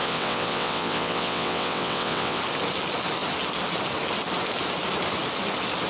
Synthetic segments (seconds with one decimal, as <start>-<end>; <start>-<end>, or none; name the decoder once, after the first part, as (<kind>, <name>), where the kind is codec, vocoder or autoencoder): 0.0-2.4 (vocoder, WaveNeXt)